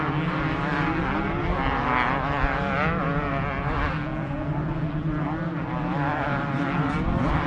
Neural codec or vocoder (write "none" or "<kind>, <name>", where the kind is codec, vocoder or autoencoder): none